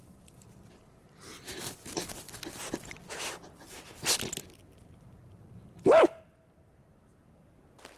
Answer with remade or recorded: recorded